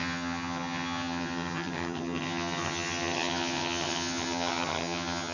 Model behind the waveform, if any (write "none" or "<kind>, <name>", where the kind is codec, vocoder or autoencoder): vocoder, HiFi-GAN